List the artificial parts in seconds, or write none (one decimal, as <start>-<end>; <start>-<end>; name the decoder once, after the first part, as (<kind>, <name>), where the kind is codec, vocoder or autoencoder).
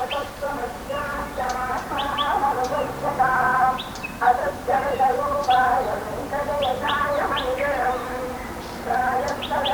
0.0-1.1 (vocoder, BigVGAN v2); 1.7-9.7